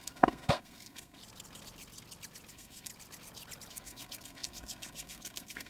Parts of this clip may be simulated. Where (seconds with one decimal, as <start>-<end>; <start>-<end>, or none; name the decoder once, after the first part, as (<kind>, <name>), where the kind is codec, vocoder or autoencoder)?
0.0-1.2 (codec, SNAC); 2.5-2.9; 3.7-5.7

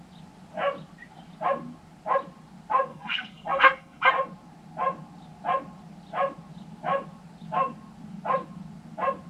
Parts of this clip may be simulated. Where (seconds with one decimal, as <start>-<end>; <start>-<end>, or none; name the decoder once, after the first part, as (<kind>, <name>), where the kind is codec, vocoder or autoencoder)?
2.9-4.0 (codec, SNAC)

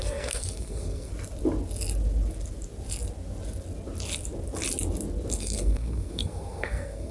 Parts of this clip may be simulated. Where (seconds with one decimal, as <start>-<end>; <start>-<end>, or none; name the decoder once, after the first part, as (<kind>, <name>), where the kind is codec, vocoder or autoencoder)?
0.0-1.1 (codec, SNAC); 5.4-7.1

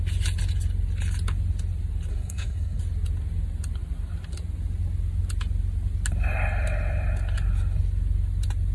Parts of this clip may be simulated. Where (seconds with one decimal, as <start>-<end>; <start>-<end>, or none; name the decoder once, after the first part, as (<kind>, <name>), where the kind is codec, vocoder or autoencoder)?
2.1-2.8 (codec, SNAC)

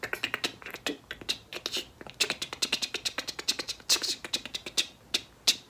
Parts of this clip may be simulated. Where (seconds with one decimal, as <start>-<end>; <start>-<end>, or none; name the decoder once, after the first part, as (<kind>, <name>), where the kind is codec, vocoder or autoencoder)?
none